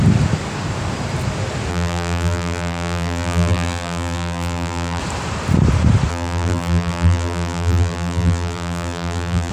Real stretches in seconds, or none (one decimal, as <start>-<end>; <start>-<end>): 0.0-1.7; 5.0-6.1